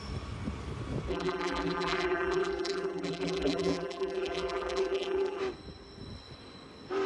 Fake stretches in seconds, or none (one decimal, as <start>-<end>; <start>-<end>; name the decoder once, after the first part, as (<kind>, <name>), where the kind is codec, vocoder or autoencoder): 1.1-5.4 (vocoder, BigVGAN v2)